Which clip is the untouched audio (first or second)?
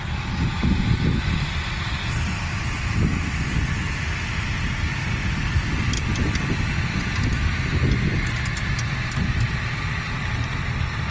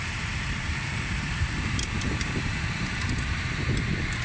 first